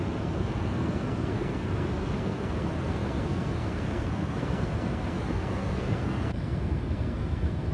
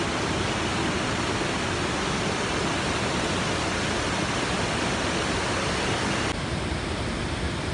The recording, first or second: second